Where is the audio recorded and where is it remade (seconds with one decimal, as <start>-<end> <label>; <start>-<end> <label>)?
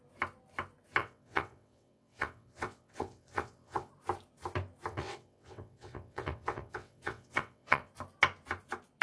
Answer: 0.0-1.0 recorded; 1.0-3.9 remade; 3.9-4.9 recorded; 4.9-7.9 remade; 7.9-9.0 recorded